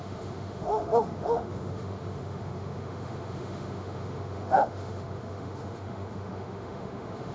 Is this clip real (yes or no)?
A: no